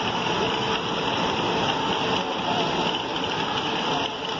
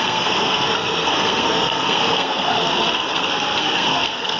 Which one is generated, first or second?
second